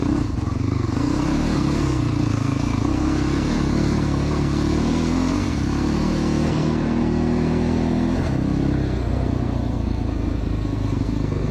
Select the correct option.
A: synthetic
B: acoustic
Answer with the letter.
A